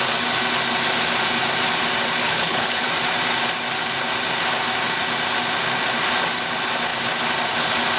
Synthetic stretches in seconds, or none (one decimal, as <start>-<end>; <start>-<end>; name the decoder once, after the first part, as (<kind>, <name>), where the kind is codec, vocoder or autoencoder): 2.2-2.9 (codec, HILCodec)